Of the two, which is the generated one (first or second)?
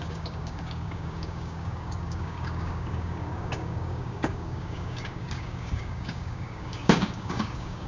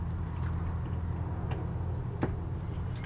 first